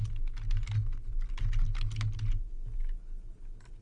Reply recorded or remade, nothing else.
recorded